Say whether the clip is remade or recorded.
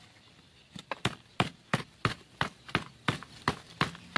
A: remade